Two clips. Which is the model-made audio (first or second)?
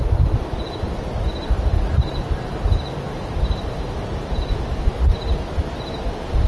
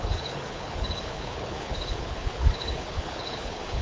second